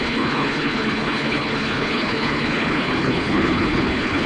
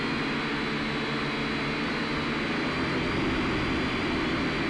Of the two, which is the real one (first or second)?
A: second